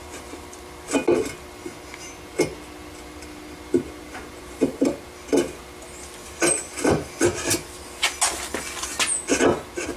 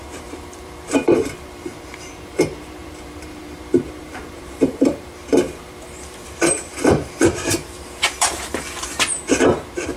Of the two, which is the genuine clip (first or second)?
first